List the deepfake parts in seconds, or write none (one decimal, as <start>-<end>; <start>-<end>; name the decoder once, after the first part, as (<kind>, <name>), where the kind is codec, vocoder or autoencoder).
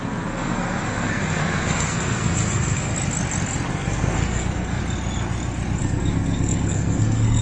0.0-2.9 (codec, SNAC); 3.7-4.8; 5.8-7.4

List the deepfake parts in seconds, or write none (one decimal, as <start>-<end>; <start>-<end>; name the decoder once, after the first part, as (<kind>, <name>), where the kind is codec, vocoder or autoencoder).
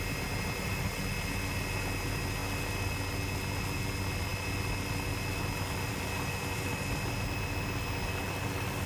none